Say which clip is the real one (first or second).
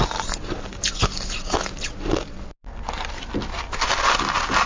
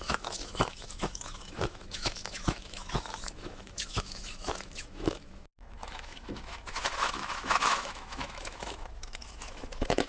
first